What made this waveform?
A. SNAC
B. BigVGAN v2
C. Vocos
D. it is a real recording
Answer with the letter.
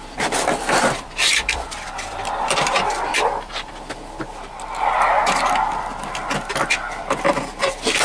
B